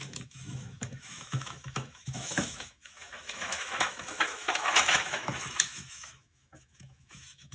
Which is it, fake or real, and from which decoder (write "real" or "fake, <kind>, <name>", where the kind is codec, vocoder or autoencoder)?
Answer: fake, autoencoder, DAC-VAE